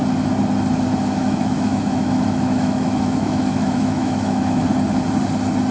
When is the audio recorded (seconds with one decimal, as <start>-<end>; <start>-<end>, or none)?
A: 0.0-1.2; 4.6-5.7